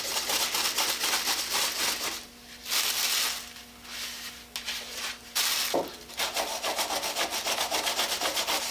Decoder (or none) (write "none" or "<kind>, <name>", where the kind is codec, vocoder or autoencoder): none